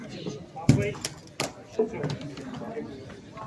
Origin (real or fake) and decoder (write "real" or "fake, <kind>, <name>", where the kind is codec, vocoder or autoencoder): real